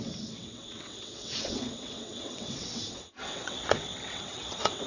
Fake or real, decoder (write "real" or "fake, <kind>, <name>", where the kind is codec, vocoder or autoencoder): fake, vocoder, WaveNeXt